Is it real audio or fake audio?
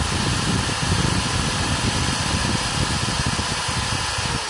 real